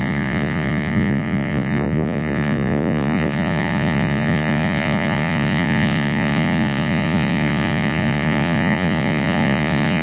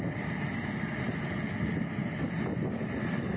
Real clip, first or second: second